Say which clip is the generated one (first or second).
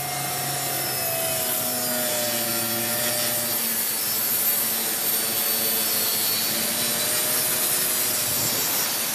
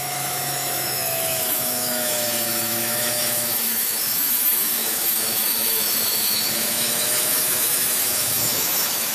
second